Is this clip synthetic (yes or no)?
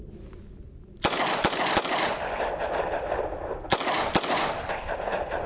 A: no